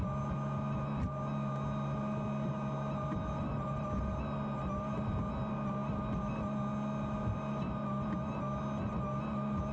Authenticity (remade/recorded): recorded